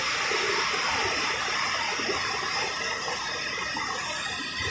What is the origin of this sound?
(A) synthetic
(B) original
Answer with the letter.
B